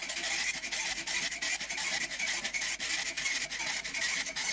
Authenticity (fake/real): real